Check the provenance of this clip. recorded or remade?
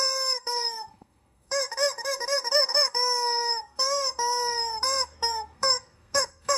remade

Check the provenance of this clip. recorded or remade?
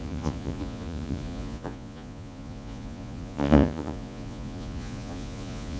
remade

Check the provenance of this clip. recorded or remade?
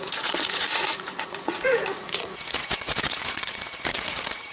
remade